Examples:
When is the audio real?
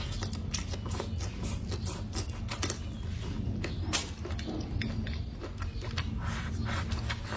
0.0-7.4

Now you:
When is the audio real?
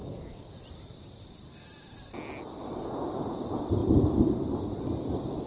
1.6-3.8; 4.3-5.5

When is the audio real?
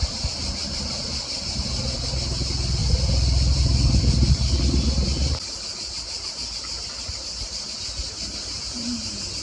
0.0-2.8; 4.3-9.4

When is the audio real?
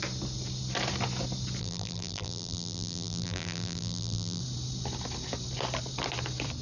0.0-1.6; 4.4-6.6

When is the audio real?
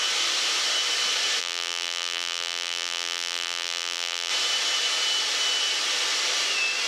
0.0-1.4; 4.3-6.9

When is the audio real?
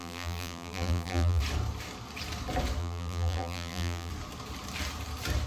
1.4-2.8; 4.1-5.5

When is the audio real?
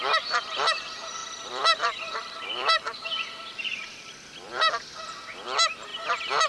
0.0-1.2; 5.1-5.9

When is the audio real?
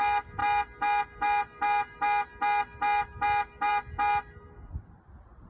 0.0-5.5